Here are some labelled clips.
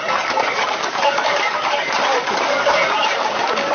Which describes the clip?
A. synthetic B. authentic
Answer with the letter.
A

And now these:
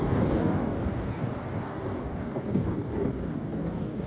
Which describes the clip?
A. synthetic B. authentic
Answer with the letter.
A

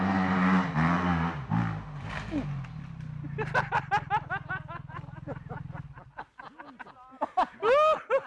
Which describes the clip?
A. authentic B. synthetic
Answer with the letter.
A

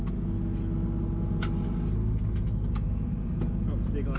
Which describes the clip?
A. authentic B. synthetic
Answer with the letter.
A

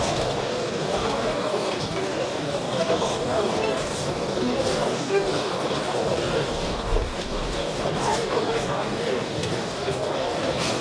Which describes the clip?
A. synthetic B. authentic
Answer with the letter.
A